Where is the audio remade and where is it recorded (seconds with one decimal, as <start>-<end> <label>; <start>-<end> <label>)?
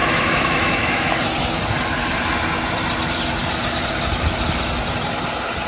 0.0-1.2 remade; 1.2-5.7 recorded